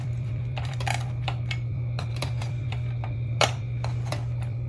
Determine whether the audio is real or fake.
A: fake